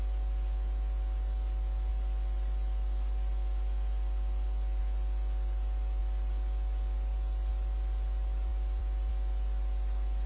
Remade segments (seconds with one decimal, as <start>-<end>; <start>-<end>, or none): 8.5-9.1